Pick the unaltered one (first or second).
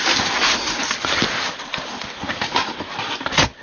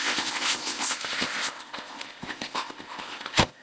first